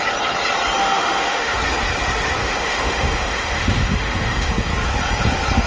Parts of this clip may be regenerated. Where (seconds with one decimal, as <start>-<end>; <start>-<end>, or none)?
0.8-1.6; 2.4-4.5